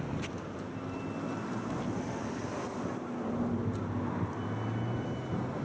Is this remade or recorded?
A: recorded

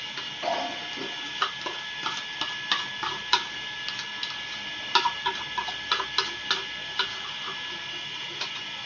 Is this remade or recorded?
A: recorded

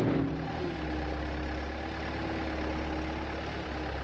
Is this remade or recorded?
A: recorded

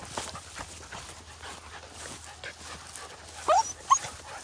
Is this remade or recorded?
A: recorded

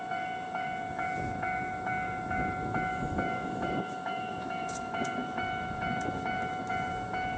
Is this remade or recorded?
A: remade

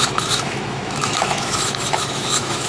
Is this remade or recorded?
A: remade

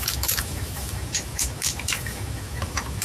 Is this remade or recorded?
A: remade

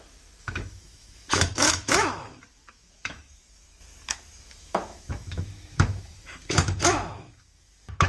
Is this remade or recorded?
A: remade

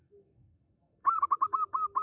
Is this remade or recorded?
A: remade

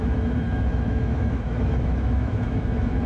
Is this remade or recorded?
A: remade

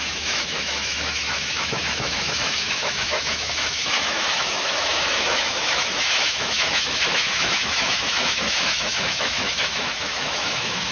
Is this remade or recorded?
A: remade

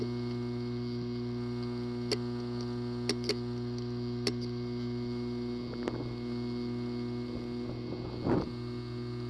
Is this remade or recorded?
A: recorded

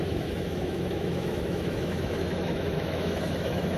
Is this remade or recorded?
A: remade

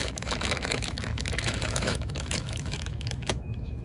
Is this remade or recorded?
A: remade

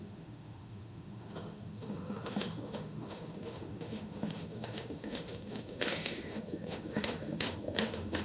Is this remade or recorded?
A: remade